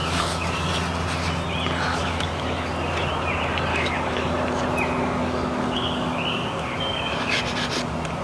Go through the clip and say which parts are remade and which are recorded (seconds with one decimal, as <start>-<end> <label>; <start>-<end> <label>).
0.0-0.7 remade; 0.7-1.9 recorded; 1.9-2.7 remade; 2.7-3.7 recorded; 3.7-4.3 remade; 4.3-5.0 recorded; 5.0-7.4 remade; 7.4-8.2 recorded